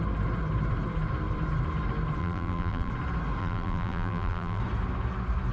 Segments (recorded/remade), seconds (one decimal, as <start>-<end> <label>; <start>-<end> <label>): 0.0-2.2 recorded; 2.2-2.9 remade; 2.9-3.4 recorded; 3.4-4.6 remade; 4.6-5.5 recorded